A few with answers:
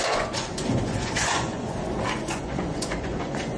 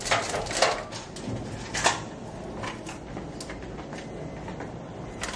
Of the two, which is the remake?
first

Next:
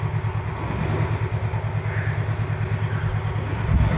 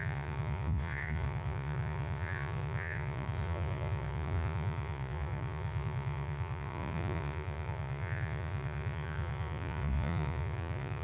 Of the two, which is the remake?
second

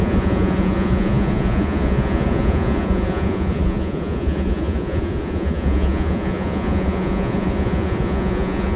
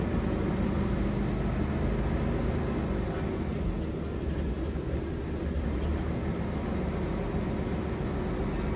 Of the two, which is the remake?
first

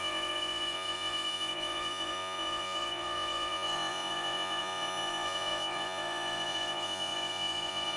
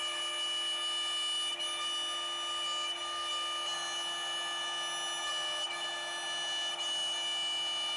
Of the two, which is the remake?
first